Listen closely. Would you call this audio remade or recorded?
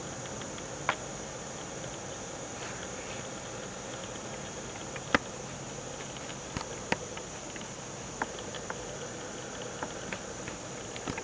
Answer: recorded